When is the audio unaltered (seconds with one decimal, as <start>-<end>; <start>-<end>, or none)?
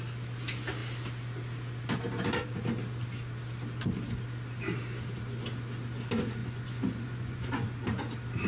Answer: 0.0-6.4; 7.5-8.5